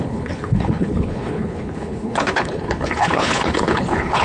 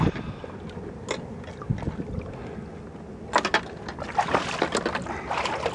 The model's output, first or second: first